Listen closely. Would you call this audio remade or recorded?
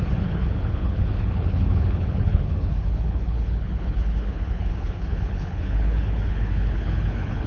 remade